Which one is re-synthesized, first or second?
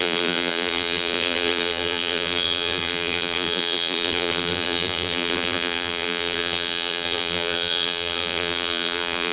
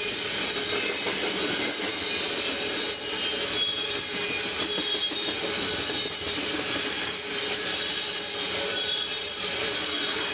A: first